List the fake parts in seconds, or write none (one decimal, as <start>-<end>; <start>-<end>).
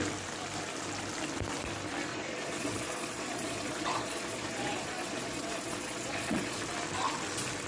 2.1-6.6